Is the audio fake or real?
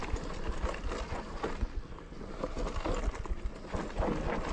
real